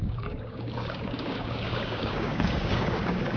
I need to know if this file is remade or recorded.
remade